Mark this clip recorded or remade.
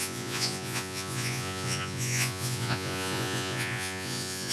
remade